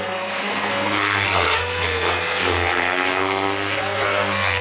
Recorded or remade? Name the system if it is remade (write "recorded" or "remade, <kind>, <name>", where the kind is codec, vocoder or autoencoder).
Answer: remade, codec, SNAC